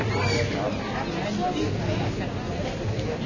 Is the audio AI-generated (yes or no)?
no